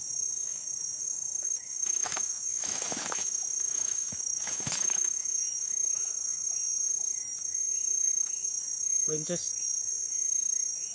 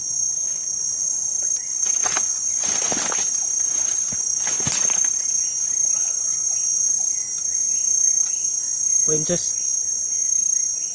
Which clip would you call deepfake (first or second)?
first